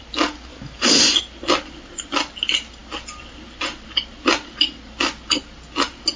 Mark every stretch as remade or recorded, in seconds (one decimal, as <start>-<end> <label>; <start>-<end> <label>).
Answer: 0.0-0.5 recorded; 0.5-1.2 remade; 1.2-6.2 recorded